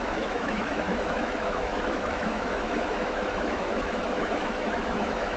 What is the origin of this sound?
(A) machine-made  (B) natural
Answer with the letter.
A